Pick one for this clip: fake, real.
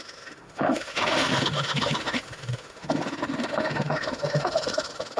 fake